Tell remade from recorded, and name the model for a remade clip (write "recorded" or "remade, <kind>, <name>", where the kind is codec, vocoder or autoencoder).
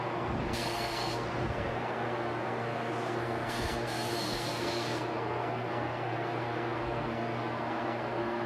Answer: remade, codec, SNAC